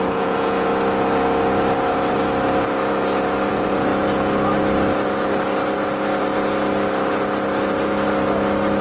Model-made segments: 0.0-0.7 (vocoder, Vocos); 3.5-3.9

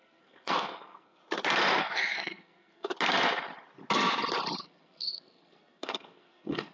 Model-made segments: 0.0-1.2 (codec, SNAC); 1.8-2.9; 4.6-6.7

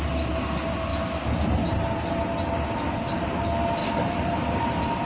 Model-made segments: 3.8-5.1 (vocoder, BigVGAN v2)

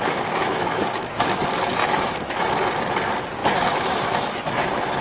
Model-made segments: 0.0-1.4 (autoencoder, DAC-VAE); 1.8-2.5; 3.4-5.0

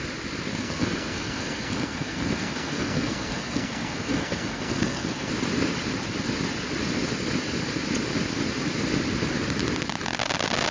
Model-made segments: 0.5-5.3 (codec, SNAC)

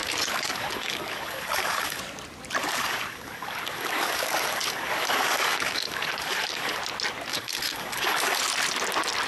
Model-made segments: 0.0-2.0 (codec, DAC); 2.6-6.8; 7.3-8.4

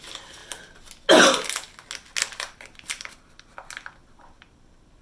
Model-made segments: none

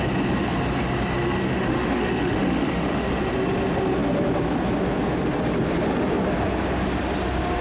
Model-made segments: 1.4-3.1 (autoencoder, DAC-VAE)